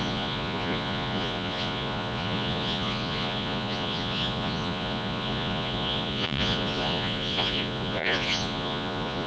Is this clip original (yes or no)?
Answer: no